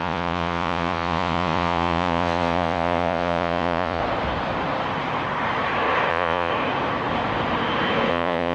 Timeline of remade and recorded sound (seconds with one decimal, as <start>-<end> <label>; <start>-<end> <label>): 0.0-4.0 remade; 4.0-6.1 recorded; 6.1-6.5 remade; 6.5-8.1 recorded; 8.1-8.5 remade